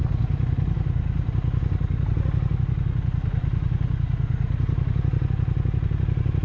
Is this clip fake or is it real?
real